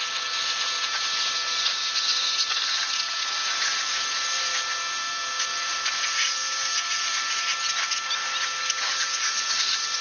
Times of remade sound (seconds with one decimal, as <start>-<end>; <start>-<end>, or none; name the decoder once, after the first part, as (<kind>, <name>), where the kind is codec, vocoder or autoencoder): none